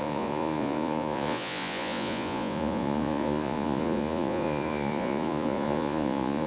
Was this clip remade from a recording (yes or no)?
yes